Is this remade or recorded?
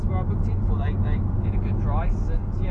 recorded